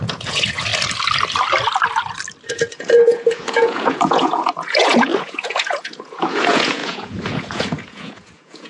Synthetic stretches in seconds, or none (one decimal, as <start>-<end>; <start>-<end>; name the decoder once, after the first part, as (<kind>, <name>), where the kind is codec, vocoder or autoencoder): 0.0-0.7 (vocoder, Vocos); 2.5-8.7